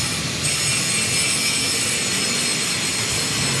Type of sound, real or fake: real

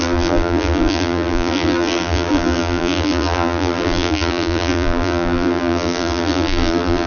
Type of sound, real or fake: fake